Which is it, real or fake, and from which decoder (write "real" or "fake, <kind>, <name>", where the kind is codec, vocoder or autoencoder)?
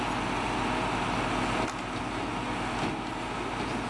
real